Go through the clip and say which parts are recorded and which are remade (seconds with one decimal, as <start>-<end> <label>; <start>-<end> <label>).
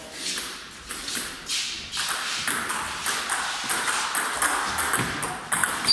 0.0-5.9 recorded